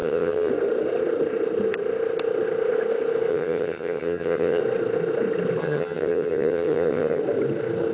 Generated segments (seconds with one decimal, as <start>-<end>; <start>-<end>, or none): 0.0-0.5; 3.3-4.6; 5.6-7.2